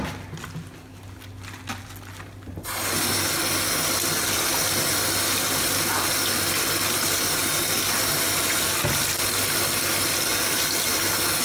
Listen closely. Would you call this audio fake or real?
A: real